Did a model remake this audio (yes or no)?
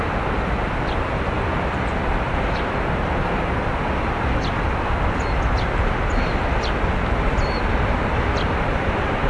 no